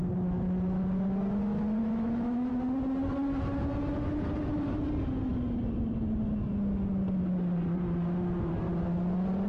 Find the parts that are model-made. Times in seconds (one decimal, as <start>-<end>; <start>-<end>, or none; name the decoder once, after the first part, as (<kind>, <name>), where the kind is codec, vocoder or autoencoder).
1.8-2.5 (autoencoder, DAC-VAE)